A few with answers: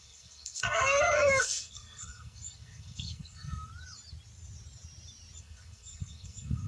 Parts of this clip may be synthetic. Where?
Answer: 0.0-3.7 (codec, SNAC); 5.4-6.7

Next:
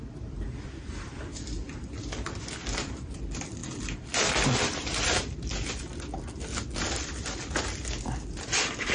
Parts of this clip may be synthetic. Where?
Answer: none

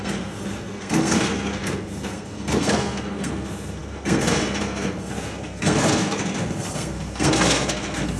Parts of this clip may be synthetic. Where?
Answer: 0.0-8.2 (codec, SNAC)

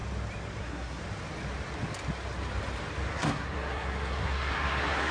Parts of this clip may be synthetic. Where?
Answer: 0.6-1.0 (codec, SNAC); 3.1-5.1